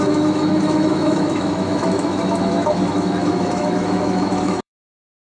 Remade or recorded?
remade